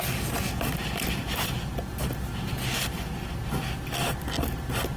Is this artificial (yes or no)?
no